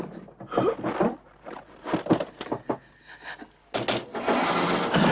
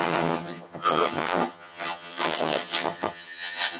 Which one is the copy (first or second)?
second